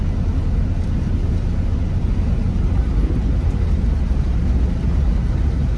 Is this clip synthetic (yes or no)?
no